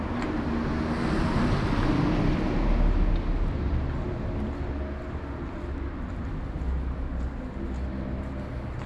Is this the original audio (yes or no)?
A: yes